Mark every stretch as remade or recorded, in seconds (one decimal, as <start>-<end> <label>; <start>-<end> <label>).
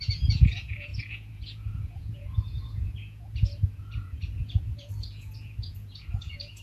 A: 0.0-6.6 remade